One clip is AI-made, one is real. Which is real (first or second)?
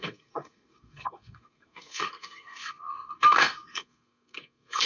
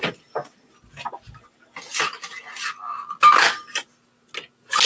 second